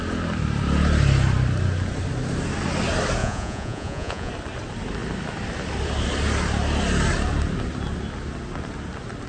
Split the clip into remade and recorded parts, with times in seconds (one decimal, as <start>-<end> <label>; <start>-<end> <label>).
0.0-3.2 recorded; 3.2-4.3 remade; 4.3-9.3 recorded